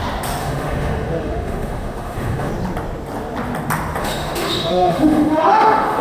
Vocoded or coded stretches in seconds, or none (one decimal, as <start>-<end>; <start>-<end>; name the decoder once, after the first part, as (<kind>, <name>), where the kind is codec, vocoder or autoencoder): 0.4-2.5 (autoencoder, DAC-VAE); 4.0-6.0

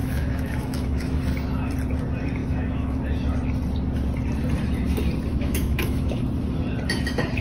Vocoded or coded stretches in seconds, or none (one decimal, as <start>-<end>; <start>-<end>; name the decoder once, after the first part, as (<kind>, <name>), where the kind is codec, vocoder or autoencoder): 0.0-1.2 (autoencoder, DAC-VAE); 2.4-3.0; 5.3-6.2

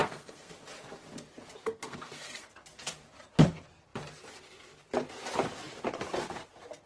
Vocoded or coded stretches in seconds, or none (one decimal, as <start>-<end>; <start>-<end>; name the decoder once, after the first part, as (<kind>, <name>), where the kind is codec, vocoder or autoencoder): 0.0-0.5 (codec, SNAC); 1.6-2.5

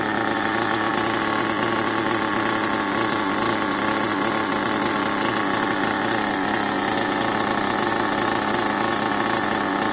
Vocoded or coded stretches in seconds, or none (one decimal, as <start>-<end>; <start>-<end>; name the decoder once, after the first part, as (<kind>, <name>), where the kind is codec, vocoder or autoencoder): none

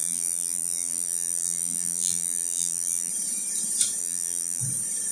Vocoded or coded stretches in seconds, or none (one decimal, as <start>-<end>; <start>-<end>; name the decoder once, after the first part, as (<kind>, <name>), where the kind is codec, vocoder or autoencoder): 0.0-3.1 (vocoder, BigVGAN v2); 4.0-4.6

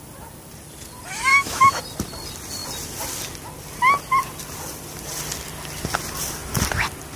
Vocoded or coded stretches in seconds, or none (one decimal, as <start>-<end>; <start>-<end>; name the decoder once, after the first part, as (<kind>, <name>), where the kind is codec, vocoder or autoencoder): 1.3-1.8 (autoencoder, DAC-VAE)